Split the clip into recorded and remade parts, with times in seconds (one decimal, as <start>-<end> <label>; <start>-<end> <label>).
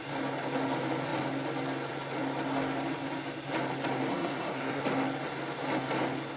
0.0-4.1 recorded; 4.1-4.8 remade; 4.8-6.4 recorded